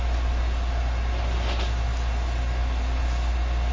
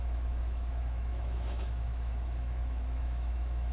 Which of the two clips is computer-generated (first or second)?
second